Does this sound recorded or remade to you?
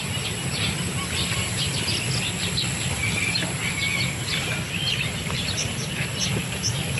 recorded